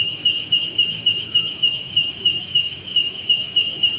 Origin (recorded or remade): remade